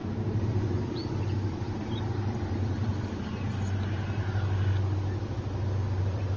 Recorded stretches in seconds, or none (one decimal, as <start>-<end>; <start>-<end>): 2.9-6.0